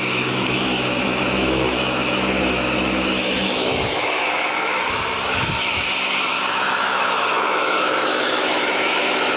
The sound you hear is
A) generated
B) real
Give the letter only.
A